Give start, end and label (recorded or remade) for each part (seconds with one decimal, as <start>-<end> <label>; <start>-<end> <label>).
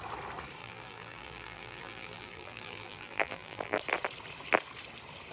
0.0-0.6 recorded; 0.6-3.8 remade; 3.8-5.3 recorded